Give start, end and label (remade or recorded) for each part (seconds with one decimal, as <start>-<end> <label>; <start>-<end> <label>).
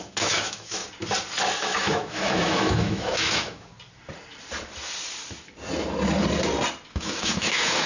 0.0-0.8 remade; 0.8-1.6 recorded; 1.6-3.7 remade; 3.7-6.9 recorded; 6.9-7.9 remade